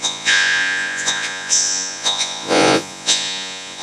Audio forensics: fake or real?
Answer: fake